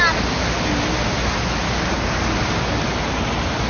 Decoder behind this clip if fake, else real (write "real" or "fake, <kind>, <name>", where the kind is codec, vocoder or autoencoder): real